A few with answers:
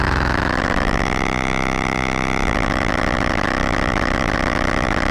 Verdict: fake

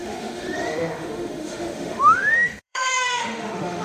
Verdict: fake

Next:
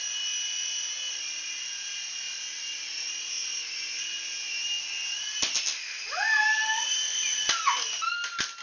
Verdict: real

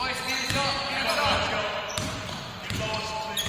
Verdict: real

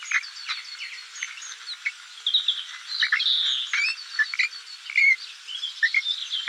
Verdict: real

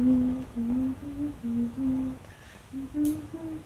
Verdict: fake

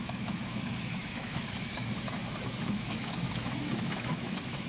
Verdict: fake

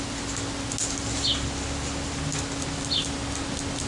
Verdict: real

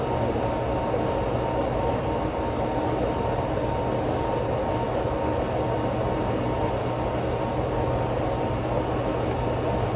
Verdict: real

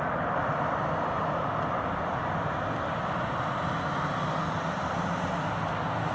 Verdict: real